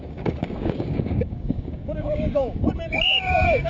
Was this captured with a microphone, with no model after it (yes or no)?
no